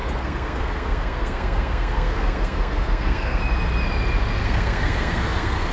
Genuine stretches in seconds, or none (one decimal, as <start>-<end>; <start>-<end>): 3.4-4.4